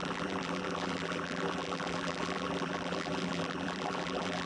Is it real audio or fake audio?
fake